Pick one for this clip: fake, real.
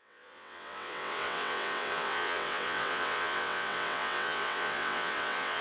fake